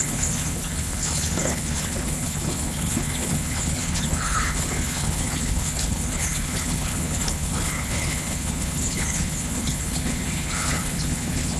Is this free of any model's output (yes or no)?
no